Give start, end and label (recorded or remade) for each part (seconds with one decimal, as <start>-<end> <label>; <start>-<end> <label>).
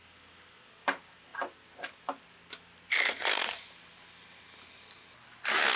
0.0-5.8 recorded